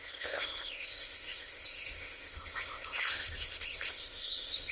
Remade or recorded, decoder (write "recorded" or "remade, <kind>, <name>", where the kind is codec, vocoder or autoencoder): remade, codec, ZipCodec